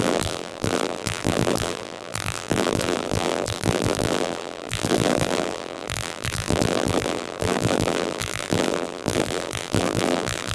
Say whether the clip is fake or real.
fake